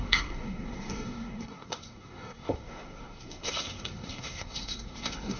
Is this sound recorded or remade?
remade